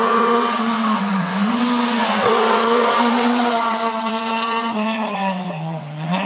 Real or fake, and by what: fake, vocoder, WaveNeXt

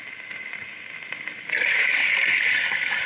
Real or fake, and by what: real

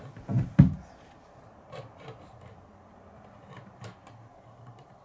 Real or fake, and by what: real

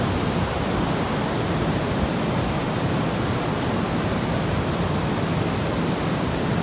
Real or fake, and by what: real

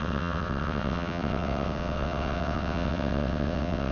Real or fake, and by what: fake, vocoder, WaveNeXt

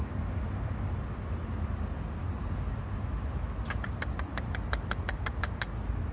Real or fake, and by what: real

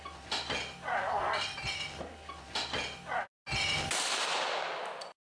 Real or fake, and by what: real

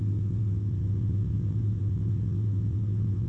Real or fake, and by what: fake, vocoder, WaveNeXt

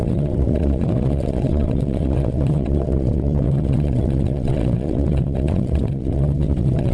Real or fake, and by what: fake, vocoder, WaveNeXt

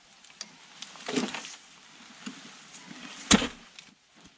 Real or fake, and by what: real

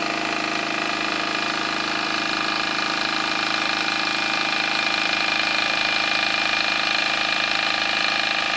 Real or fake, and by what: real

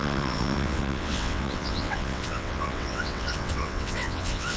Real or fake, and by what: fake, vocoder, WaveNeXt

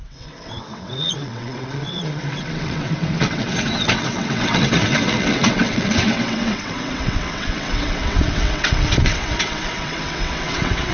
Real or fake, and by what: fake, vocoder, WaveNeXt